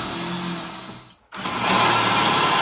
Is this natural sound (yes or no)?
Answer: yes